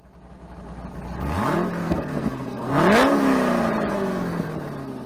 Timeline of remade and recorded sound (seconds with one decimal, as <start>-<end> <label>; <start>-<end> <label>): 0.0-1.8 recorded; 1.8-2.7 remade; 2.7-3.9 recorded; 3.9-4.5 remade; 4.5-5.1 recorded